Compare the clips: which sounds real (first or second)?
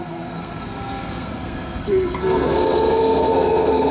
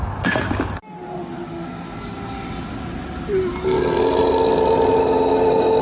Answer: second